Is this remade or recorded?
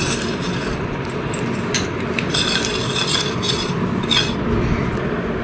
recorded